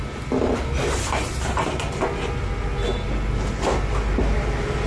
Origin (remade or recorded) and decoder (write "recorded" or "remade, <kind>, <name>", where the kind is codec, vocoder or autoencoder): recorded